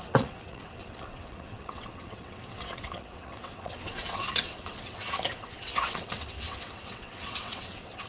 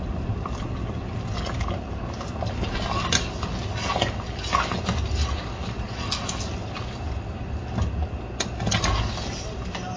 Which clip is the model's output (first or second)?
first